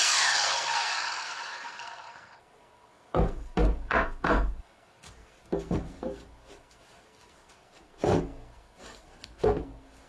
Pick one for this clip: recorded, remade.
remade